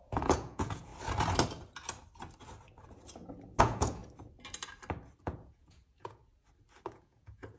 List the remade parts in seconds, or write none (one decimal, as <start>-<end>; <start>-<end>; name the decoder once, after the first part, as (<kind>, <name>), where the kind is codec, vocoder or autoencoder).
0.0-0.9 (vocoder, Vocos); 3.6-4.0; 5.2-6.2; 6.9-7.6